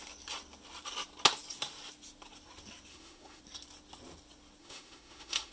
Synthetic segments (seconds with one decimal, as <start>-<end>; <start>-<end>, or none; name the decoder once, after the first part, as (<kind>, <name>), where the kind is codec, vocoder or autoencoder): 2.9-3.4 (autoencoder, DAC-VAE); 4.6-5.5